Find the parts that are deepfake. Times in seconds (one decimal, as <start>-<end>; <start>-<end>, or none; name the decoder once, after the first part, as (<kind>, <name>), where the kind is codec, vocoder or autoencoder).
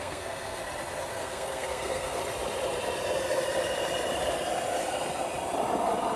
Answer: 0.0-0.6 (codec, SNAC); 1.1-2.2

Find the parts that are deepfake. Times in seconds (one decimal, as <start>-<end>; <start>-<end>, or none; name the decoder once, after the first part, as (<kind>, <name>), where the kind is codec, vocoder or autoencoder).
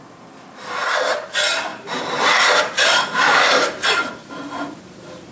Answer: 1.7-4.3 (vocoder, BigVGAN v2)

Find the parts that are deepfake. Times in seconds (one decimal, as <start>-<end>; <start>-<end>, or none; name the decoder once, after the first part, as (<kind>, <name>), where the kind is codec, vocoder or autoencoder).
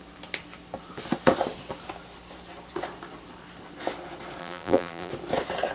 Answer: 4.4-5.1 (vocoder, BigVGAN v2)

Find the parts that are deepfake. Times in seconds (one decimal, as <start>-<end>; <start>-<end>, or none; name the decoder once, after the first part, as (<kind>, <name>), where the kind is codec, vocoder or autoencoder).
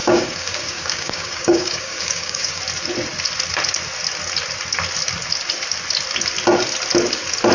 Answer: 0.0-2.6 (codec, DAC)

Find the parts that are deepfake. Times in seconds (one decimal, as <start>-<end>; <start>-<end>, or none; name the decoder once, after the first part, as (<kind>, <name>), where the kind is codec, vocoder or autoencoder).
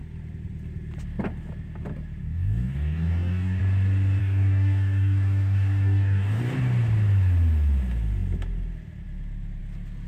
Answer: 2.2-3.6 (codec, DAC); 4.2-6.4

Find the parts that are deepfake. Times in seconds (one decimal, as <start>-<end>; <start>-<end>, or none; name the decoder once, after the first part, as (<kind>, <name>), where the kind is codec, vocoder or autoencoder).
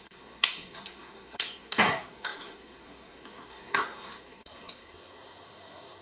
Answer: 0.0-6.0 (codec, SNAC)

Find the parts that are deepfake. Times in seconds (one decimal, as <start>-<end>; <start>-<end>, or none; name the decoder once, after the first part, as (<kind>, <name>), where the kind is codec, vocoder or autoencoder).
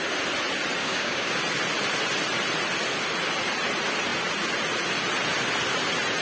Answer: 0.8-1.3 (codec, DAC)